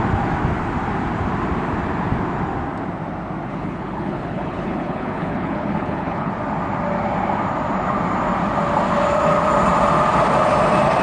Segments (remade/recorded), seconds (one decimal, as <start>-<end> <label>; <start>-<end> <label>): 0.0-3.5 recorded; 3.5-6.3 remade; 6.3-11.0 recorded